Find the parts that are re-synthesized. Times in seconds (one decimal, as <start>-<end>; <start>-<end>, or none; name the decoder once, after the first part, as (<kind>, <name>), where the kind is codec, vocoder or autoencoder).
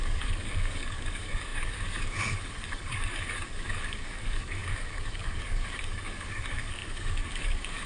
0.0-7.9 (codec, DAC)